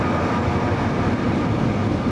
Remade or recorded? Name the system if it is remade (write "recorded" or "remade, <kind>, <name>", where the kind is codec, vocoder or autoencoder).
recorded